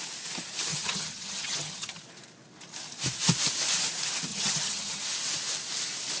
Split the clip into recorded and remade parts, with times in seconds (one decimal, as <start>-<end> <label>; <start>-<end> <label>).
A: 0.0-0.7 recorded; 0.7-2.0 remade; 2.0-4.3 recorded; 4.3-5.0 remade; 5.0-6.2 recorded